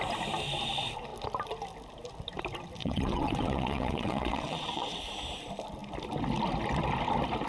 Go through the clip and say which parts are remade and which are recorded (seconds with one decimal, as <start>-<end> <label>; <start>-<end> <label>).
0.0-2.8 recorded; 2.8-5.0 remade; 5.0-7.5 recorded